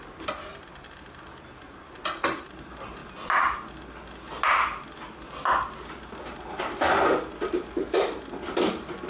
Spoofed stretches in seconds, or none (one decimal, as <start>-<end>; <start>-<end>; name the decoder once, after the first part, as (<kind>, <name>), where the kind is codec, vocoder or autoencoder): none